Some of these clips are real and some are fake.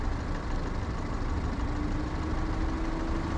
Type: real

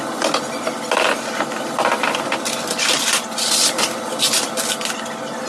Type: real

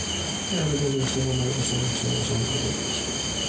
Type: real